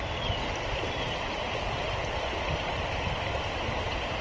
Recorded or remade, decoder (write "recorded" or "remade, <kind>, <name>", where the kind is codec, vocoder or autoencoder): recorded